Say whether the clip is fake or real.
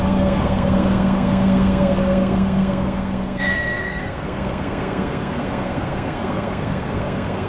fake